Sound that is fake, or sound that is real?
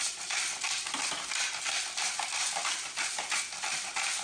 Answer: real